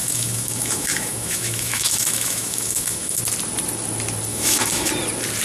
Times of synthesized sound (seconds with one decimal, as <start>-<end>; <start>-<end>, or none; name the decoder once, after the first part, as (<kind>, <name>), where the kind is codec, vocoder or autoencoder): 0.0-3.2 (autoencoder, DAC-VAE); 4.3-4.9